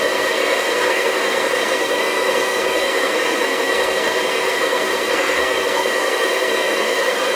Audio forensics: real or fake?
fake